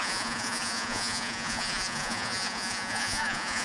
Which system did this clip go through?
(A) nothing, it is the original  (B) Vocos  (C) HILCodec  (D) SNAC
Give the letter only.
B